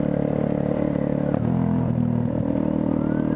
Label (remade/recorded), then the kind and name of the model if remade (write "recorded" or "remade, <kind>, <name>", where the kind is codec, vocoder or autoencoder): recorded